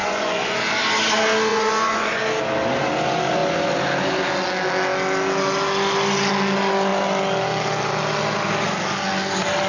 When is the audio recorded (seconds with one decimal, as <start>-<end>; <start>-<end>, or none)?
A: 0.6-1.5; 2.2-9.7